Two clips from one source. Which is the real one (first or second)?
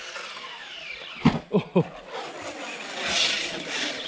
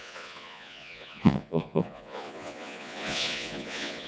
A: first